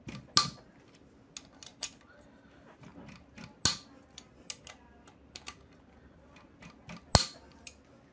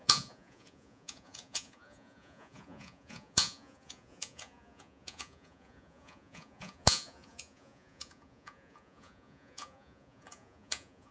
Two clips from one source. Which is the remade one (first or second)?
second